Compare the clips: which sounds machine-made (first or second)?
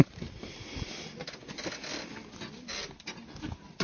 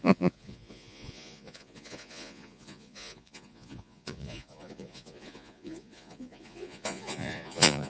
second